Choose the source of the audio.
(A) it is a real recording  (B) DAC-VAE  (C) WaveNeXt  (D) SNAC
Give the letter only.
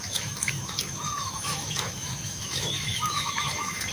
B